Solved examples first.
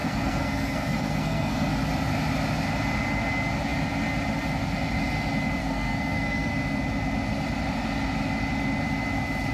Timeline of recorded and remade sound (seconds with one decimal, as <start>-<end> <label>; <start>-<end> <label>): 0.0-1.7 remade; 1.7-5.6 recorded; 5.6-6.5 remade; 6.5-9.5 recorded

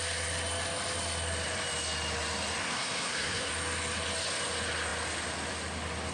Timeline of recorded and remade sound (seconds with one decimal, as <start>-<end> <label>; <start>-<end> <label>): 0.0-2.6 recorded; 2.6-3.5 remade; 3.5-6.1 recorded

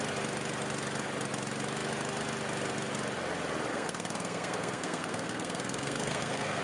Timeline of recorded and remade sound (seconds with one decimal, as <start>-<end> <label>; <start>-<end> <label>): 0.0-3.7 recorded; 3.7-6.6 remade

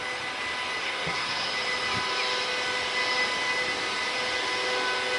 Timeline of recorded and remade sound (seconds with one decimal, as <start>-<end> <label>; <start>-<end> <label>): 0.0-0.8 recorded; 0.8-1.5 remade; 1.5-5.2 recorded

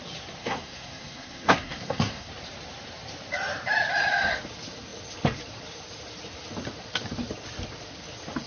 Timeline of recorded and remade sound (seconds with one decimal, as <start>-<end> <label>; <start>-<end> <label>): 0.0-0.4 recorded; 0.4-2.3 remade; 2.3-8.5 recorded

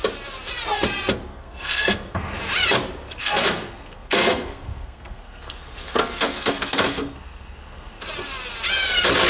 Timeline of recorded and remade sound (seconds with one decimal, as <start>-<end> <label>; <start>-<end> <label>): 0.0-1.3 recorded; 1.3-2.4 remade; 2.4-3.2 recorded; 3.2-8.0 remade; 8.0-9.3 recorded

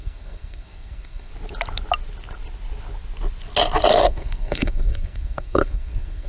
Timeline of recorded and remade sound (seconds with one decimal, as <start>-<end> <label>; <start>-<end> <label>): 0.0-1.3 remade; 1.3-3.9 recorded; 3.9-6.3 remade

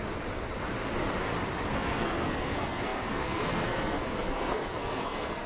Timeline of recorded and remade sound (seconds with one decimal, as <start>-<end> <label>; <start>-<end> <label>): 0.0-1.7 recorded; 1.7-5.5 remade